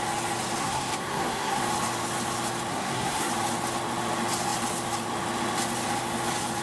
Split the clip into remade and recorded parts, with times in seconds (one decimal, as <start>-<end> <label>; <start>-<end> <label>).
0.0-0.6 recorded; 0.6-1.6 remade; 1.6-2.7 recorded; 2.7-3.3 remade; 3.3-6.6 recorded